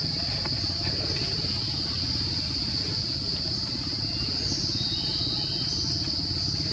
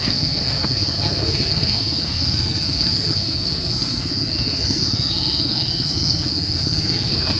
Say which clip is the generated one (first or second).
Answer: second